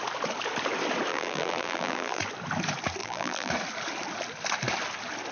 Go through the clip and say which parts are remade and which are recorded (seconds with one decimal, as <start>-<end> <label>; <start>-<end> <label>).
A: 0.0-1.1 recorded; 1.1-2.2 remade; 2.2-3.0 recorded; 3.0-3.5 remade; 3.5-5.3 recorded